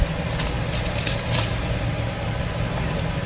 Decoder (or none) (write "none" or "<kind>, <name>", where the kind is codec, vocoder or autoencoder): none